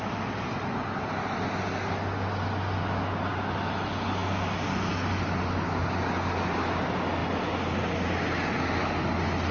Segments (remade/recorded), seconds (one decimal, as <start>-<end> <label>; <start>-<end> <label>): 0.0-9.5 recorded